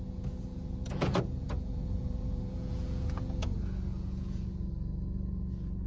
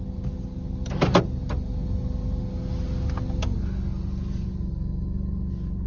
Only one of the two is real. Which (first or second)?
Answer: second